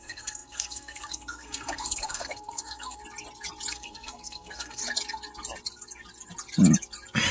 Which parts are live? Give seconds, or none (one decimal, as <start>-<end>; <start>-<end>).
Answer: 3.0-3.7; 4.8-7.3